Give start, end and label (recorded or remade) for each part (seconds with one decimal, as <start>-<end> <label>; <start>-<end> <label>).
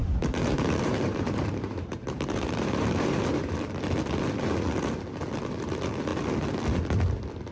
0.0-3.8 remade; 3.8-7.5 recorded